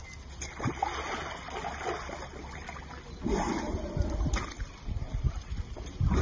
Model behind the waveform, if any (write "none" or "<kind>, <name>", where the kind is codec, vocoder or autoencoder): none